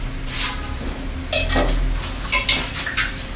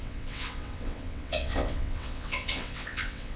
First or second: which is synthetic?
second